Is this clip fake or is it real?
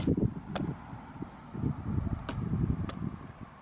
real